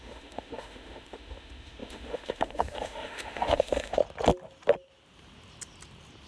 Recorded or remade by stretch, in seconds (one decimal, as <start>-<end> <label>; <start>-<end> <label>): 0.0-4.0 remade; 4.0-6.3 recorded